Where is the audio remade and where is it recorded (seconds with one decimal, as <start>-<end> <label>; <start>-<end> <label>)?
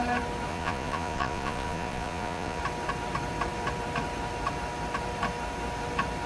0.0-0.5 recorded; 0.5-2.6 remade; 2.6-6.3 recorded